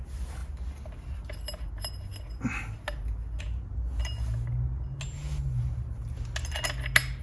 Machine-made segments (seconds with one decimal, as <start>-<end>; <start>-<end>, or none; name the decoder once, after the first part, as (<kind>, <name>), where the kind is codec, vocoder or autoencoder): none